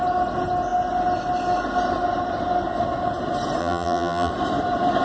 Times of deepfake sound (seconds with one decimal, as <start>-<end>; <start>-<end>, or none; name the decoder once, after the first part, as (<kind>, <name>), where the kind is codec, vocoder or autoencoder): 3.6-4.3 (vocoder, BigVGAN v2)